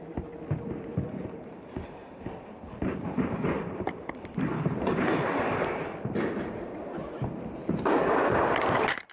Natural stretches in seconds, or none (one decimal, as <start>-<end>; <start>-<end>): 0.0-0.9; 6.0-9.1